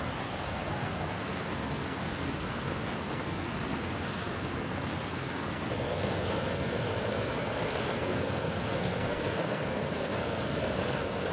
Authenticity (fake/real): fake